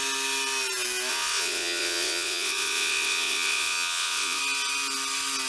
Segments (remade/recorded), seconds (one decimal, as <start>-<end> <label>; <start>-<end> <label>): 0.0-1.1 recorded; 1.1-4.4 remade; 4.4-5.5 recorded

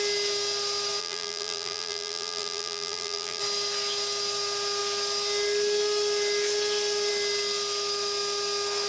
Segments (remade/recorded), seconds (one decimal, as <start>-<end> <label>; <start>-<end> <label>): 0.0-1.0 recorded; 1.0-3.4 remade; 3.4-8.9 recorded